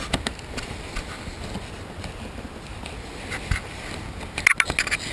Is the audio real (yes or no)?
yes